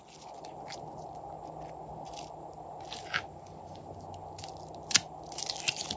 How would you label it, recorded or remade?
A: recorded